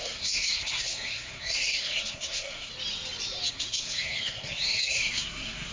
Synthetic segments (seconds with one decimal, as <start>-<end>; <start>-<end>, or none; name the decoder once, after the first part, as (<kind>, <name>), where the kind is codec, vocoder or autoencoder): 0.0-2.7 (codec, SNAC); 3.5-5.7